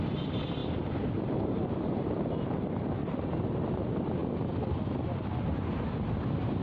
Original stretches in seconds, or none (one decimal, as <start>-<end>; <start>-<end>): 0.0-6.6